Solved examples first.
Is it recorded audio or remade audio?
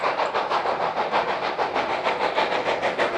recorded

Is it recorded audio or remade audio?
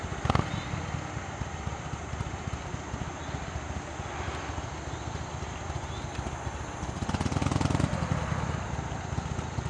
recorded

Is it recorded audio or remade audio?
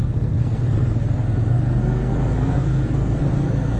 remade